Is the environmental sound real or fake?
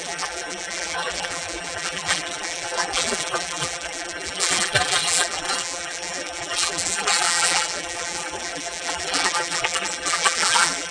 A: fake